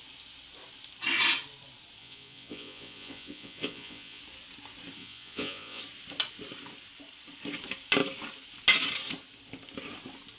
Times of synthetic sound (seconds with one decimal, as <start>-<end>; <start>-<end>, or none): 2.0-4.2; 5.0-5.8